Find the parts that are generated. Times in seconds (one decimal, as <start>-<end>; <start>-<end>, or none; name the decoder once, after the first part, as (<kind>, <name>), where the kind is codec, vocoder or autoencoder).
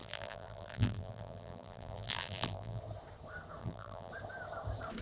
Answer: 0.0-2.8 (vocoder, BigVGAN v2); 3.6-4.1